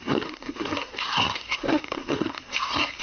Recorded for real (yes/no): no